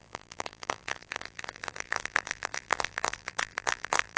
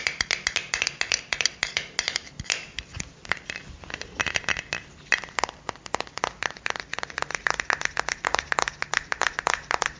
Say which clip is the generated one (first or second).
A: first